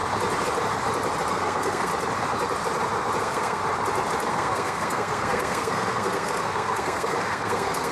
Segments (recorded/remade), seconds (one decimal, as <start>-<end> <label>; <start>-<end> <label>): 0.0-1.3 recorded; 1.3-1.9 remade; 1.9-3.2 recorded; 3.2-3.6 remade; 3.6-4.3 recorded; 4.3-7.9 remade